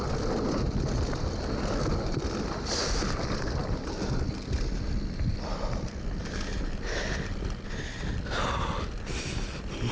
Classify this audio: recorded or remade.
recorded